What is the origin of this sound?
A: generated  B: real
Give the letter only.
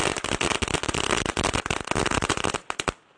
B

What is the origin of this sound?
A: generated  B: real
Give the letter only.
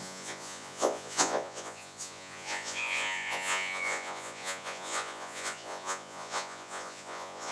A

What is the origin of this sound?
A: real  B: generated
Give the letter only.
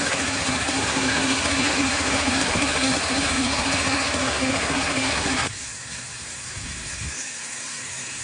B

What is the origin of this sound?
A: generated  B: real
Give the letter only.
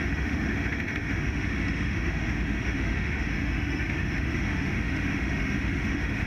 A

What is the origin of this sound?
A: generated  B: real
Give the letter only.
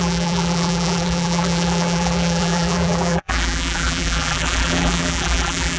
A